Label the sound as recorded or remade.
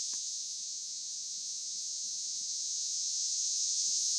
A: remade